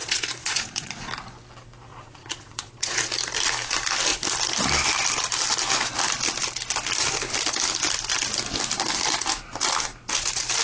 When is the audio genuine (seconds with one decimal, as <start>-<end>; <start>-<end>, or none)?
1.1-1.9; 3.0-10.6